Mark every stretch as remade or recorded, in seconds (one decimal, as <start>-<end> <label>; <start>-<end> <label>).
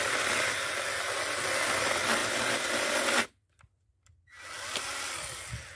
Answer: 0.0-5.8 recorded